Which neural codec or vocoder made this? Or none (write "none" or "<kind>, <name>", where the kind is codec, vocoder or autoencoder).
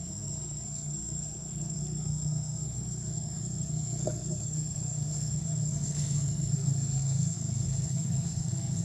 codec, SNAC